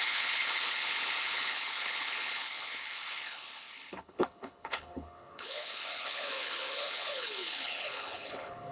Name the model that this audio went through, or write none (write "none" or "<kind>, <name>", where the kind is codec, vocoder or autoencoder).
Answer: codec, HILCodec